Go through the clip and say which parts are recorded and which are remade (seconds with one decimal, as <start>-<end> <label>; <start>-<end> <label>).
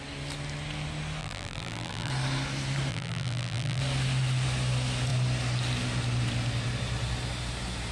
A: 0.0-1.2 recorded; 1.2-2.1 remade; 2.1-2.9 recorded; 2.9-3.8 remade; 3.8-7.9 recorded